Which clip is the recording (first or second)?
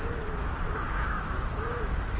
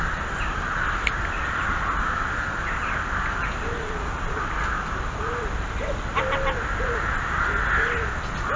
second